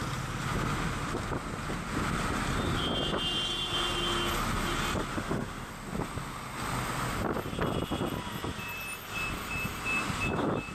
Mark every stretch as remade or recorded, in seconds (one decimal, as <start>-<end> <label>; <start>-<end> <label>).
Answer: 0.0-5.1 recorded; 5.1-5.7 remade; 5.7-10.7 recorded